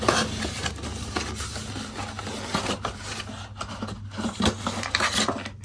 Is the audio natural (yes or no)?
yes